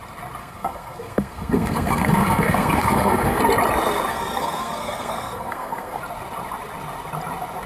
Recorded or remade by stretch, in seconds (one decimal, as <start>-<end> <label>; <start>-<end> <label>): 0.0-0.4 recorded; 0.4-3.4 remade; 3.4-4.1 recorded; 4.1-6.0 remade; 6.0-7.7 recorded